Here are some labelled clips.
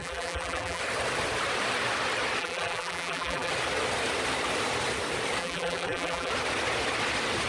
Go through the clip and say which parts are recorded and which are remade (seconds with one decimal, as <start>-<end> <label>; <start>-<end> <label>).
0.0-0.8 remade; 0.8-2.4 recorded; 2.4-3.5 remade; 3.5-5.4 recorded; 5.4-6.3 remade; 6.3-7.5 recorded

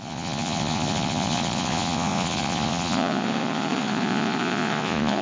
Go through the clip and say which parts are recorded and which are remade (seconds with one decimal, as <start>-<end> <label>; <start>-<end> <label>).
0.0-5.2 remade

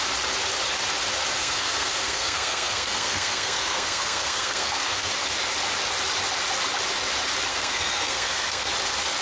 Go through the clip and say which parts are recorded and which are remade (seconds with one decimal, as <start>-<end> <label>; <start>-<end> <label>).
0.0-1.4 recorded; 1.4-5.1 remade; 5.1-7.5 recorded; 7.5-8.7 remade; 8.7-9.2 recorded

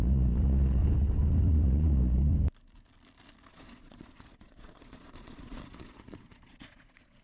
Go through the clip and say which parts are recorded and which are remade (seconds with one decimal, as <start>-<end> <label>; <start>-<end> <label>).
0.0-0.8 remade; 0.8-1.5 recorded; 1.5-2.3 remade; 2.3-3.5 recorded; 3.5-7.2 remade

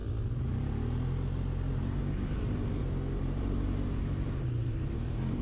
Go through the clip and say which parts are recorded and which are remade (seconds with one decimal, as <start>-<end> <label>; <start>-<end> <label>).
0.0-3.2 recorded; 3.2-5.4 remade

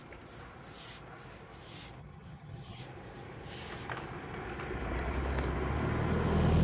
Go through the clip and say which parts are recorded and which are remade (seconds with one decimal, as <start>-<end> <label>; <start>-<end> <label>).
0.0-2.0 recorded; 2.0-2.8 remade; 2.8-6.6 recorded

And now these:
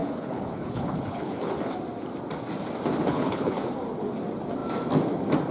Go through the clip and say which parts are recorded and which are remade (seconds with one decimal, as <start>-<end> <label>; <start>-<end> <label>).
0.0-1.5 remade; 1.5-3.1 recorded; 3.1-3.7 remade; 3.7-5.5 recorded

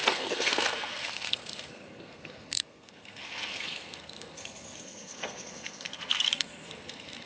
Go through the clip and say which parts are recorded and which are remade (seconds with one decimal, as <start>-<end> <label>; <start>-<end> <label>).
0.0-7.3 remade